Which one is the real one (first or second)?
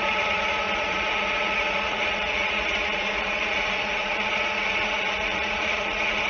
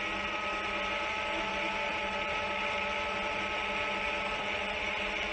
second